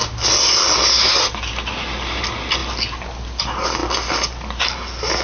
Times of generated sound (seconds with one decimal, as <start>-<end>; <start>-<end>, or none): none